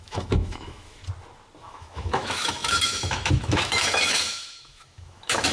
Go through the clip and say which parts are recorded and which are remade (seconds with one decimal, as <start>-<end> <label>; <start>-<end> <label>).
0.0-1.0 remade; 1.0-1.6 recorded; 1.6-5.5 remade